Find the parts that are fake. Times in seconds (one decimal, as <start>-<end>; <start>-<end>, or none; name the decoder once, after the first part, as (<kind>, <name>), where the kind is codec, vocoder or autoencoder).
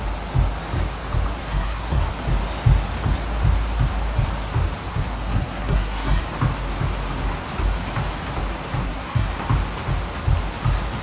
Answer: 1.4-2.1 (codec, SNAC); 4.9-6.2; 8.8-9.3